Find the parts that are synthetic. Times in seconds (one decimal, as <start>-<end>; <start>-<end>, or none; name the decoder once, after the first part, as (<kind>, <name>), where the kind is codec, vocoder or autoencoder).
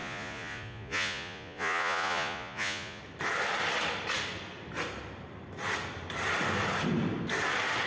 0.0-3.0 (vocoder, Vocos)